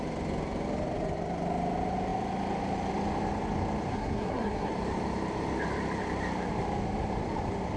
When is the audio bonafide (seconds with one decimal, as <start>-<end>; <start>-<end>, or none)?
0.0-3.9; 4.7-7.8